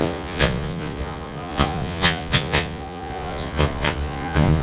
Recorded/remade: remade